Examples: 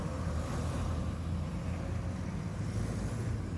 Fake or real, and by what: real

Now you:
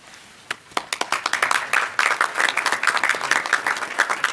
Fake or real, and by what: real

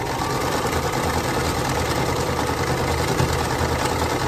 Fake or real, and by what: real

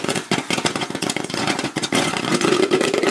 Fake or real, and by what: fake, vocoder, Vocos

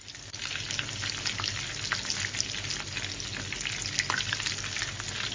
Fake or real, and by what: real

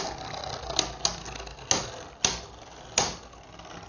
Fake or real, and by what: real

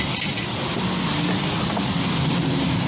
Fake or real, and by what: real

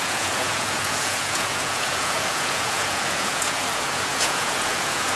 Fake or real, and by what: fake, vocoder, Vocos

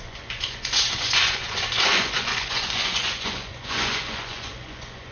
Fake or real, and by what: fake, vocoder, Vocos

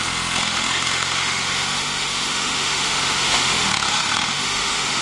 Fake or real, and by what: fake, autoencoder, DAC-VAE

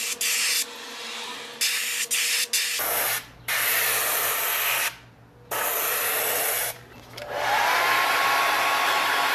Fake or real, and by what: real